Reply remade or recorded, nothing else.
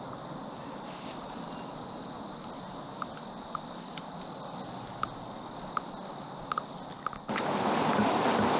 recorded